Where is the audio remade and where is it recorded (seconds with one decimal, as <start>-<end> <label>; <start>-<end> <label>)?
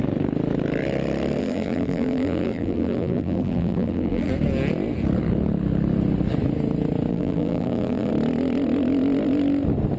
0.0-1.4 recorded; 1.4-4.3 remade; 4.3-7.1 recorded; 7.1-8.1 remade; 8.1-10.0 recorded